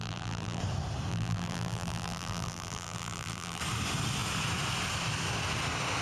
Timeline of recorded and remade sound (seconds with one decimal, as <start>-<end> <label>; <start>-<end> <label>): 0.0-0.6 remade; 0.6-1.1 recorded; 1.1-3.6 remade; 3.6-6.0 recorded

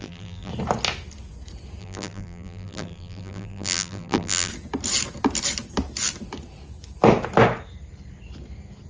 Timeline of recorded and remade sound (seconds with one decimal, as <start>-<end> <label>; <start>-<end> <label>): 0.0-0.5 remade; 0.5-1.8 recorded; 1.8-4.5 remade; 4.5-8.9 recorded

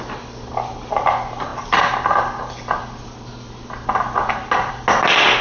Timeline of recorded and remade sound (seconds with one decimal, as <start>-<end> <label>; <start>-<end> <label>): 0.0-5.4 recorded

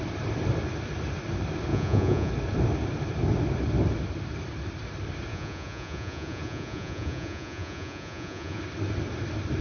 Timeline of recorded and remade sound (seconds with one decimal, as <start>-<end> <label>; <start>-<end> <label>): 0.0-1.7 recorded; 1.7-2.3 remade; 2.3-5.3 recorded; 5.3-8.6 remade; 8.6-9.6 recorded